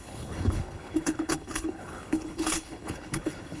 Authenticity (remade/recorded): remade